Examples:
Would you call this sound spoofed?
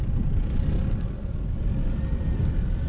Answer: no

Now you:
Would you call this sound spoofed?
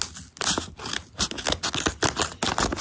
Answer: no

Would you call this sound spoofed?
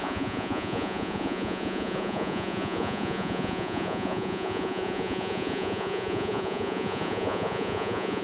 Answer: yes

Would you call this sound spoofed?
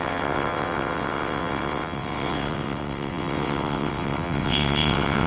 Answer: yes